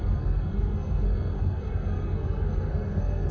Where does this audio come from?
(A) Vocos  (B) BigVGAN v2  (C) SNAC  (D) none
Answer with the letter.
C